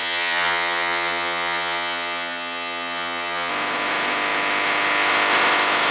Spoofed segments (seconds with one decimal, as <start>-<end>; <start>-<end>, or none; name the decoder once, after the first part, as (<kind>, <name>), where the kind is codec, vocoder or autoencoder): 0.0-3.5 (vocoder, HiFi-GAN)